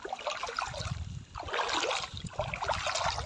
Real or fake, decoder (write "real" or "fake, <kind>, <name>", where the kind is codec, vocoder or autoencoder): real